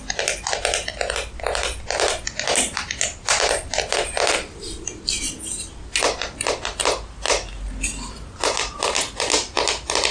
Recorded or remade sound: recorded